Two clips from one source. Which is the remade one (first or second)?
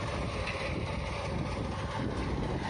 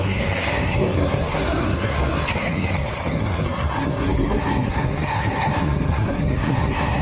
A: second